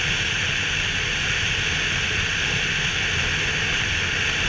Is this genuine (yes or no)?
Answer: yes